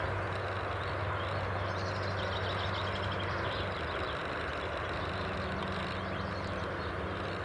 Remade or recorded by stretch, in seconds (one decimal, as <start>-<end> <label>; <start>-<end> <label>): 0.0-7.4 recorded